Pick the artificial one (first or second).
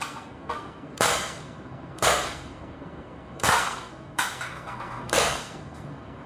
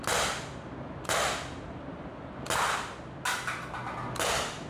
first